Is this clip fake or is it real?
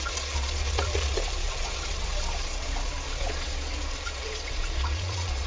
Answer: fake